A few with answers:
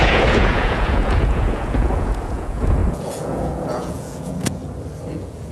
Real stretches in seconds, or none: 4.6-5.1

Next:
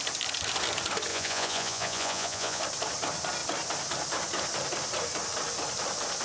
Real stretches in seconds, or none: 0.0-1.1; 2.6-6.2

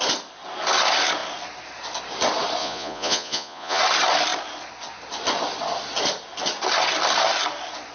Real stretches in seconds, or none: 0.0-2.6; 3.8-7.9

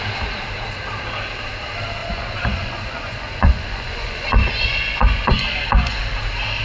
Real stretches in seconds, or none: 0.0-2.0; 6.0-6.6

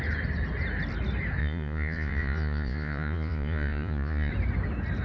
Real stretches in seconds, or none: 0.0-1.4; 4.3-5.0

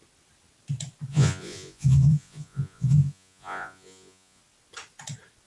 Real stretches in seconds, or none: 0.0-1.1; 4.4-5.5

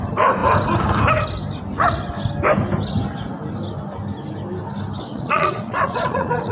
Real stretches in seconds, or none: 0.0-5.1

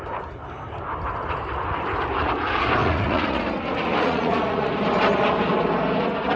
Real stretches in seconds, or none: 0.0-2.8; 3.4-3.9; 4.7-6.4